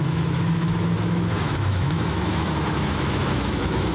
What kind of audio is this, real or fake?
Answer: fake